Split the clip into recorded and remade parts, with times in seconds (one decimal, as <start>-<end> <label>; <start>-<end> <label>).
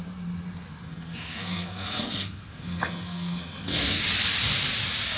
0.0-0.9 recorded; 0.9-4.0 remade; 4.0-5.2 recorded